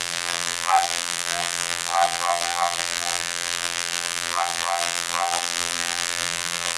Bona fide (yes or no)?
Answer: no